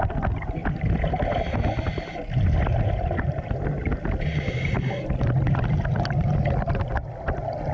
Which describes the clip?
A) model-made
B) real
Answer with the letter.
B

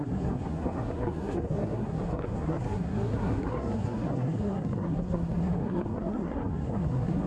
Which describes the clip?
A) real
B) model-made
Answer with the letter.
B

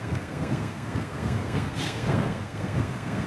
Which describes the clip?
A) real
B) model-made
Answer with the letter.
B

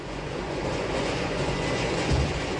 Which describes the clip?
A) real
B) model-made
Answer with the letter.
B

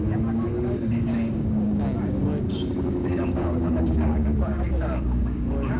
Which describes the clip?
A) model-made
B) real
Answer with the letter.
A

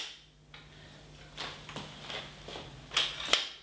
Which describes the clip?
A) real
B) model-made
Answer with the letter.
A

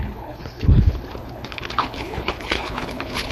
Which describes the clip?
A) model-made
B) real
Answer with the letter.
A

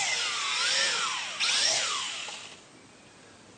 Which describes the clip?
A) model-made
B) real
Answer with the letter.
B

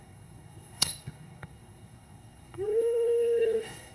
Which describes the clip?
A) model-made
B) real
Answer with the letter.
A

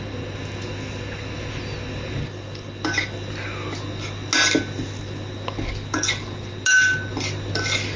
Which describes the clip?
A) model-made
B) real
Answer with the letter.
B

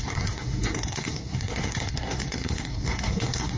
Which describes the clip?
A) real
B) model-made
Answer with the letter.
B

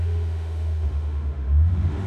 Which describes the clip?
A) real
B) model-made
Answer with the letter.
B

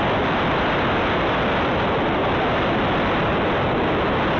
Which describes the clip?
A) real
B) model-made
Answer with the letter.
A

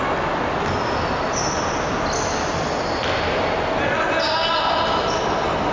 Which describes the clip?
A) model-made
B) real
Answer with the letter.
B